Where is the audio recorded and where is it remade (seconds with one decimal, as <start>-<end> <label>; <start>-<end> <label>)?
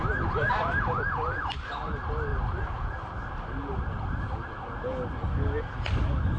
0.0-0.4 recorded; 0.4-1.9 remade; 1.9-6.4 recorded